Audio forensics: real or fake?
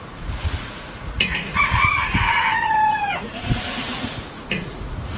fake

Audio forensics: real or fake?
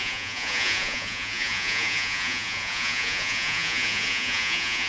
fake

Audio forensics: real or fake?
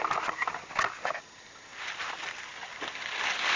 real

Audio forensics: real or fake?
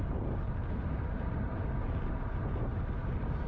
real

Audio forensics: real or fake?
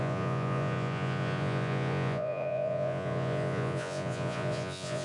fake